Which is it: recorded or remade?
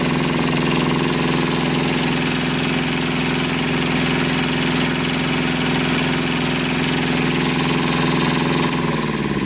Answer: recorded